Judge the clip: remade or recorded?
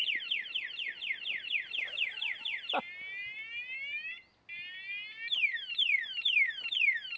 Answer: recorded